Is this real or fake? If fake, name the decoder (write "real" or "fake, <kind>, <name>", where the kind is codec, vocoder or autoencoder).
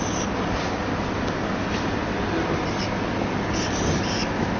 real